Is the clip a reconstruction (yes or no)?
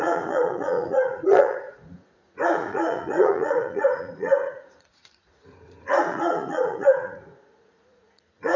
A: yes